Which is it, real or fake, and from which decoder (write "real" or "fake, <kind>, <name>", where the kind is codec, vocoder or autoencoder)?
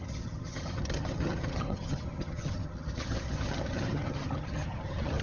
fake, vocoder, HiFi-GAN